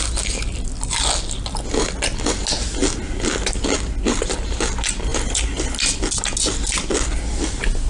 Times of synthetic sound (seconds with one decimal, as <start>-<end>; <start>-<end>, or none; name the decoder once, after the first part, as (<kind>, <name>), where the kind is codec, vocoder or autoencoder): none